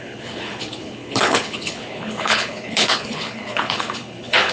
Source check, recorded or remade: remade